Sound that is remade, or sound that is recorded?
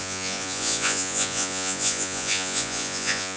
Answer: remade